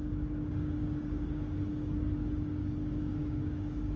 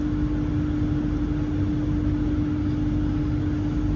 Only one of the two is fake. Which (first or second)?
first